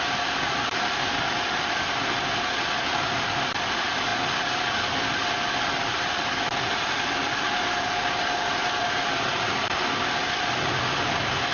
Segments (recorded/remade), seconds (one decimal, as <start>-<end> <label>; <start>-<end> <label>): 0.0-11.5 recorded